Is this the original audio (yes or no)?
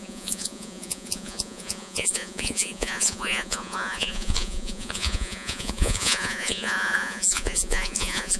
no